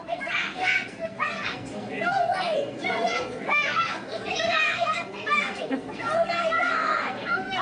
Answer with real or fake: fake